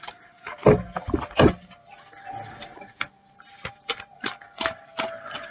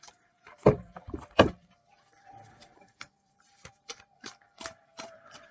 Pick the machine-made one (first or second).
second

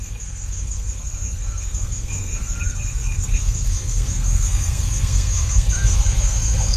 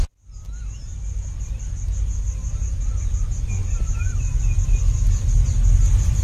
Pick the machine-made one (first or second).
first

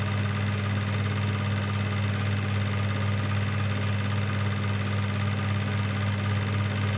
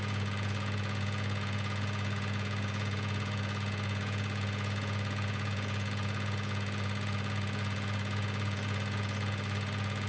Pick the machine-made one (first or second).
second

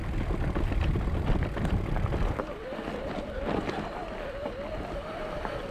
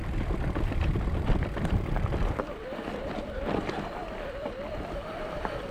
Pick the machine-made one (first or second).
second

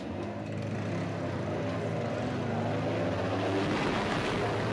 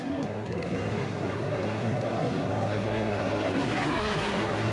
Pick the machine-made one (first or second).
second